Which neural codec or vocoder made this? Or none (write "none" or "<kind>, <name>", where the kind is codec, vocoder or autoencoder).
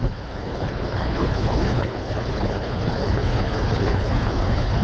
codec, HILCodec